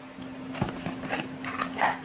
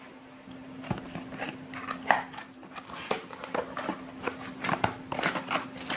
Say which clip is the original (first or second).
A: first